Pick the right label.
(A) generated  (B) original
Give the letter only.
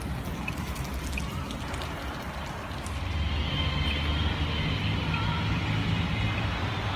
B